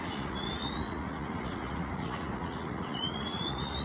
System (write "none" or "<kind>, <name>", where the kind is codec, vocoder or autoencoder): vocoder, Vocos